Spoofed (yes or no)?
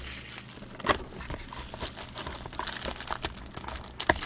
no